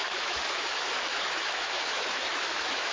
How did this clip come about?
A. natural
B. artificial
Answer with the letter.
B